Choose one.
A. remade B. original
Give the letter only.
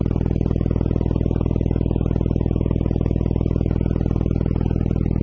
B